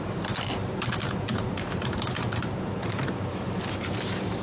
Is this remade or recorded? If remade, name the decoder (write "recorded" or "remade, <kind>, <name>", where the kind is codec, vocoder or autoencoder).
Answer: remade, vocoder, BigVGAN v2